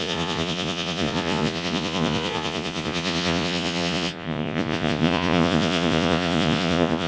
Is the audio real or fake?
fake